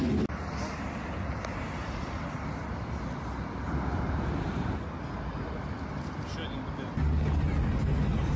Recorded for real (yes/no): yes